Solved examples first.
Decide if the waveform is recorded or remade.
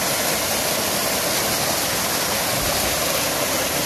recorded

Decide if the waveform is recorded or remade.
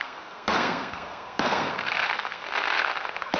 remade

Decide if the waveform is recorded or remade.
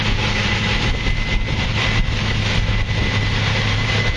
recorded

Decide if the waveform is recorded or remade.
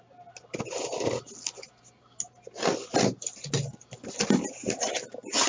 recorded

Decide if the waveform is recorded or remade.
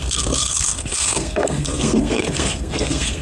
remade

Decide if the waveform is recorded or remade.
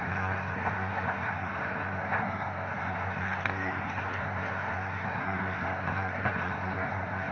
remade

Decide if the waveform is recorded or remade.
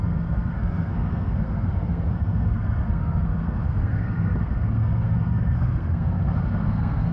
remade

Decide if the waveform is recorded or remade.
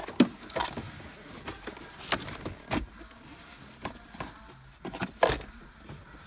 recorded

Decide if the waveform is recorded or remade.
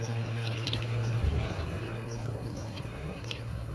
remade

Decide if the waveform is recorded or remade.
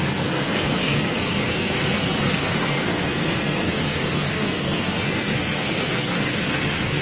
remade